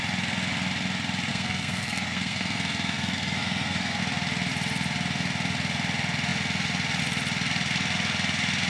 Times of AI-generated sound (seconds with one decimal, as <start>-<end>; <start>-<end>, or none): 1.3-4.0